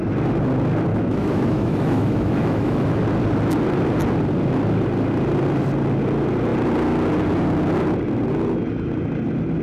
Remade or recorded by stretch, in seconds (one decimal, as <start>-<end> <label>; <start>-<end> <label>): 0.0-0.9 recorded; 0.9-3.0 remade; 3.0-9.6 recorded